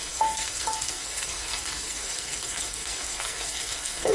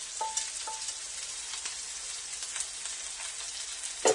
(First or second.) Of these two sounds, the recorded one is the second